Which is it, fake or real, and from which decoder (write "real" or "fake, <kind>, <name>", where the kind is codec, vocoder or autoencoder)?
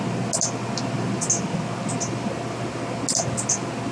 real